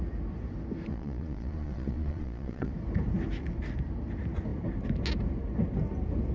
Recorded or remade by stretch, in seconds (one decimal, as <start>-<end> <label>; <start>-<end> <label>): 0.0-0.9 recorded; 0.9-2.7 remade; 2.7-6.3 recorded